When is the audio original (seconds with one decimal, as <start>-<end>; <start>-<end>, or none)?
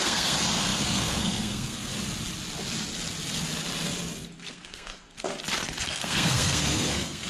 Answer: 1.9-4.5; 5.3-5.8